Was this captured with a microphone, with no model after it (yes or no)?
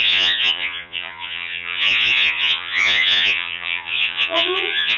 no